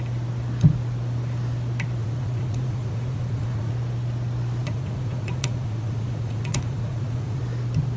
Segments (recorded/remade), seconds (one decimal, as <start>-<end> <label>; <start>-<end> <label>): 0.0-2.0 recorded; 2.0-3.7 remade; 3.7-4.6 recorded; 4.6-7.4 remade; 7.4-8.0 recorded